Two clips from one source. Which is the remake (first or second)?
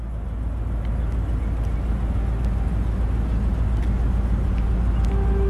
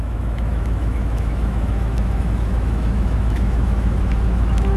second